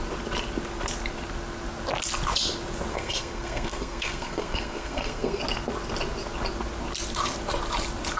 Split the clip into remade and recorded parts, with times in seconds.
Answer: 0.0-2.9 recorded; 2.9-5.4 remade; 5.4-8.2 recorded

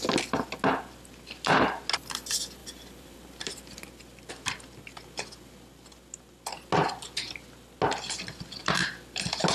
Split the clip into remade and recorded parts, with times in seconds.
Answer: 0.0-2.6 recorded; 2.6-4.3 remade; 4.3-9.5 recorded

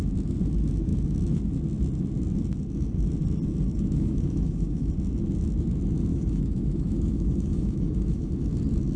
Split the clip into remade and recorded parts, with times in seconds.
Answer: 0.0-3.7 recorded; 3.7-4.9 remade; 4.9-6.1 recorded; 6.1-8.3 remade; 8.3-9.0 recorded

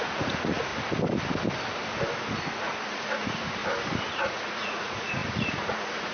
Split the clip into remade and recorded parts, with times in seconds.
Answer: 0.0-0.7 remade; 0.7-2.9 recorded; 2.9-3.6 remade; 3.6-4.1 recorded; 4.1-6.1 remade

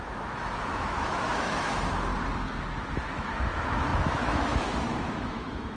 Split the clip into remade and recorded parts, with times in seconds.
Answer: 0.0-2.1 remade; 2.1-2.9 recorded; 2.9-5.8 remade

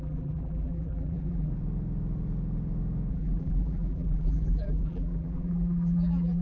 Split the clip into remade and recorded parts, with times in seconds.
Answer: 0.0-1.5 remade; 1.5-3.1 recorded; 3.1-6.4 remade